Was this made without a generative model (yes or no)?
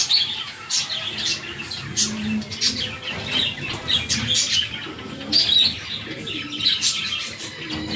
yes